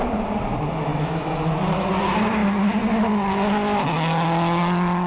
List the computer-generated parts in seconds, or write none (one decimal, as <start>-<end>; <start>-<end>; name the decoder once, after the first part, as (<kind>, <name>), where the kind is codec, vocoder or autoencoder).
0.9-1.9 (autoencoder, DAC-VAE)